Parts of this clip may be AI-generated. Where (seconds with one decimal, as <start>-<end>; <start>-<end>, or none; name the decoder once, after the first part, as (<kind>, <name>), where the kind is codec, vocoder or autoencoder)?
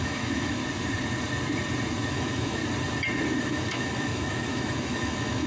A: 0.0-0.6 (autoencoder, DAC-VAE); 2.1-2.6; 3.4-5.5